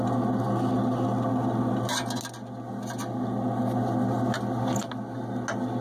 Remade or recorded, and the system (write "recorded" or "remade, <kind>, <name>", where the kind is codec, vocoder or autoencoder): recorded